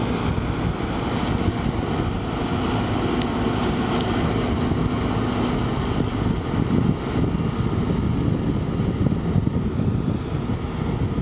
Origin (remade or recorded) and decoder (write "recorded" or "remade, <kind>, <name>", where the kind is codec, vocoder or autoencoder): recorded